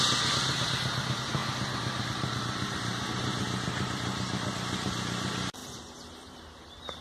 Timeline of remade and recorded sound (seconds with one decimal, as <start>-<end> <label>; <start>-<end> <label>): 0.0-1.4 remade; 1.4-2.0 recorded; 2.0-7.0 remade